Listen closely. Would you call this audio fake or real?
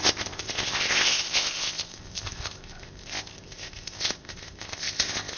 fake